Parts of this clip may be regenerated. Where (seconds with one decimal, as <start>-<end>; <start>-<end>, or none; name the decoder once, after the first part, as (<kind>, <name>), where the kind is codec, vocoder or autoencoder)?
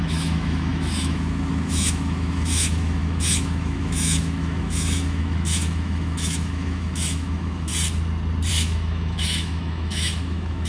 0.0-7.7 (autoencoder, DAC-VAE); 8.5-10.7